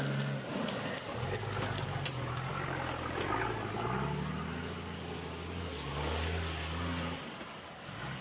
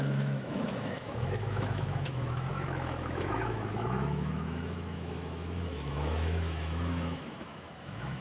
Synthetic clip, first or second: second